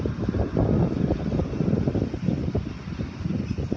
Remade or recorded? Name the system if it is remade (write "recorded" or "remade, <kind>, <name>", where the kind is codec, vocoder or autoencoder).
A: recorded